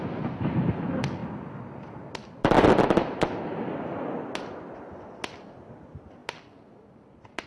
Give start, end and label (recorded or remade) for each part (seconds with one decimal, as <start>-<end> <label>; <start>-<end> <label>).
0.0-7.5 recorded